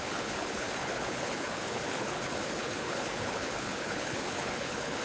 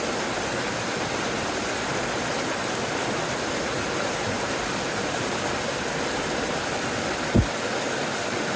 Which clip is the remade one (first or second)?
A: first